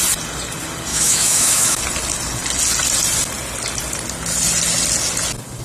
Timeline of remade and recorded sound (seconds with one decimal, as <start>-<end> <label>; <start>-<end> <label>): 0.0-0.9 recorded; 0.9-1.8 remade; 1.8-5.6 recorded